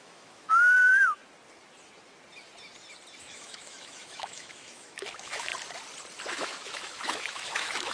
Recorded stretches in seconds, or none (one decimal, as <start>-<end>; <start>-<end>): 0.9-3.2; 5.5-6.3